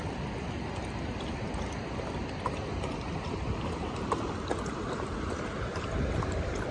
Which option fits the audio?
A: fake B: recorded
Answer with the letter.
B